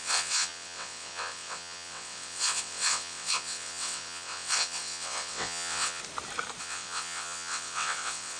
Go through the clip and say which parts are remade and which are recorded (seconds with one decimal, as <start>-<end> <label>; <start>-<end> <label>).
0.0-6.0 remade; 6.0-6.6 recorded; 6.6-8.4 remade